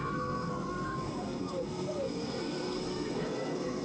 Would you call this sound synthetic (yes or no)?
yes